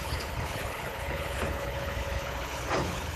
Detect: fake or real fake